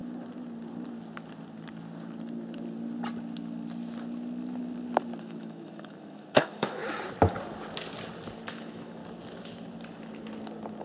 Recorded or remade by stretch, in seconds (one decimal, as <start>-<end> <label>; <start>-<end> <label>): 0.0-5.2 recorded; 5.2-6.8 remade; 6.8-8.5 recorded; 8.5-9.0 remade; 9.0-10.8 recorded